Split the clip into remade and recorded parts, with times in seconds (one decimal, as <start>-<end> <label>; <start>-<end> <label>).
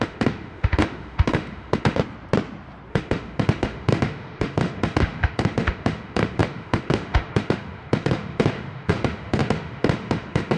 0.0-2.0 remade; 2.0-2.9 recorded; 2.9-10.6 remade